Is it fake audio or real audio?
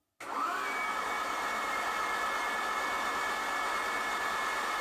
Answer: real